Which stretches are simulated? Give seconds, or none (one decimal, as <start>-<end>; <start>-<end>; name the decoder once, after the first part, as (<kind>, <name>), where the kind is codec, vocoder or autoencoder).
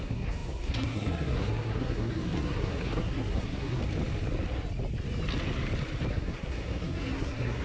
0.0-3.8 (codec, SNAC); 6.1-7.6